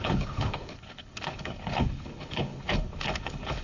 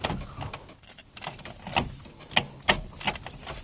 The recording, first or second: second